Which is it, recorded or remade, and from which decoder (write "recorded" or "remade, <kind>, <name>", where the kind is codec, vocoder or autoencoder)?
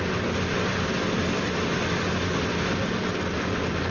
remade, vocoder, BigVGAN v2